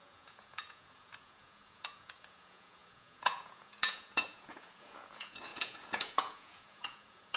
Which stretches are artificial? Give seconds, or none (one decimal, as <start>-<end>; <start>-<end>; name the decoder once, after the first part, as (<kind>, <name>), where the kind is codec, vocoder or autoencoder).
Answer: 0.0-7.4 (vocoder, Vocos)